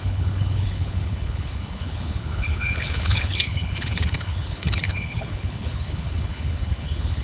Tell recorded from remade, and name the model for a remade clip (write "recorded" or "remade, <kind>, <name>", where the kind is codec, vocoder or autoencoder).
remade, codec, HILCodec